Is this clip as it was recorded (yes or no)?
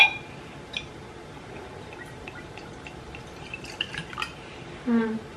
no